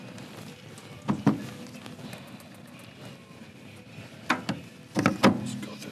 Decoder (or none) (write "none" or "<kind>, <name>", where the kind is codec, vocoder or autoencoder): none